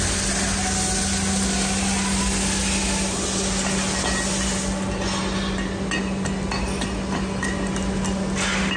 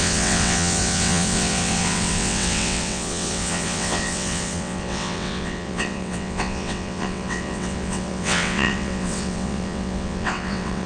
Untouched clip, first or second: first